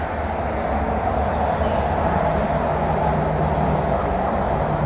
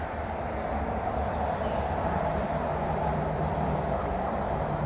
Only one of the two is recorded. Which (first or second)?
first